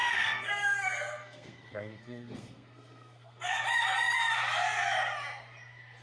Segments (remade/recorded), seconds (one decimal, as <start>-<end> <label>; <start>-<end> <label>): 0.0-3.6 remade; 3.6-6.0 recorded